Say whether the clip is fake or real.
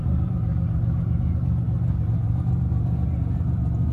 fake